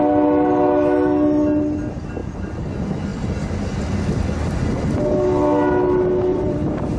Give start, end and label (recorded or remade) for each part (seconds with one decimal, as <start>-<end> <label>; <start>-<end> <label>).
0.0-2.2 recorded; 2.2-2.7 remade; 2.7-6.3 recorded; 6.3-7.0 remade